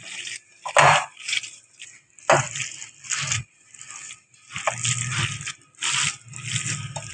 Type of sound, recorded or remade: recorded